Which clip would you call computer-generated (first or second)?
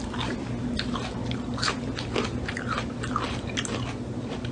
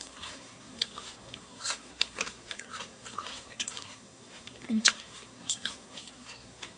second